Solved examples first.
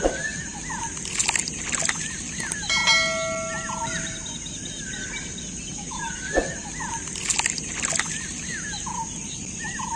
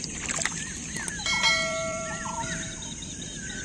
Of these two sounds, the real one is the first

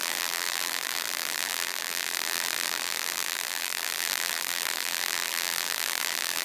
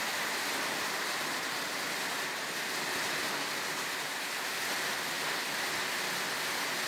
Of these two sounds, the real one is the second